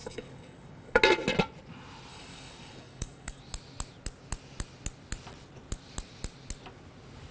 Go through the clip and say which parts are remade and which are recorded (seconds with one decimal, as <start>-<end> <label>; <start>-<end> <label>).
0.0-1.0 remade; 1.0-2.1 recorded; 2.1-3.4 remade; 3.4-7.3 recorded